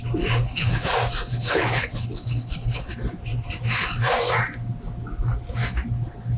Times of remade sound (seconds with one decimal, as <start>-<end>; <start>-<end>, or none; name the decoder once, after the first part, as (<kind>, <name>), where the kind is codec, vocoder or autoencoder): 0.4-0.9 (codec, HILCodec); 1.3-2.9